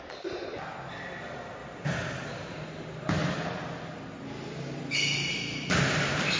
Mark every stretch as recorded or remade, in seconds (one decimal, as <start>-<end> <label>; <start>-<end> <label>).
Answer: 0.0-1.6 recorded; 1.6-3.1 remade; 3.1-6.4 recorded